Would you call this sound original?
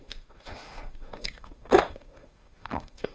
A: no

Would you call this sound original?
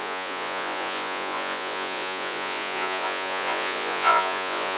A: no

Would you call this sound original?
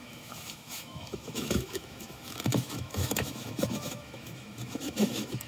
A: no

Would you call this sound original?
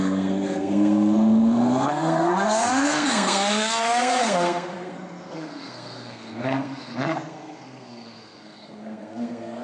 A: no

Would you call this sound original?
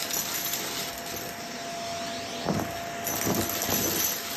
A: yes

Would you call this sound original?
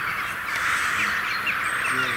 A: yes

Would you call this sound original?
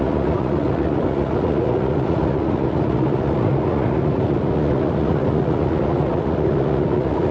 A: no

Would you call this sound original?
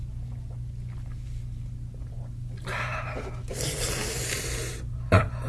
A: yes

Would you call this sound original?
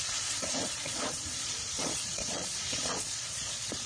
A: no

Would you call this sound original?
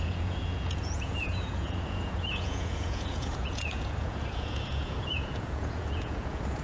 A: no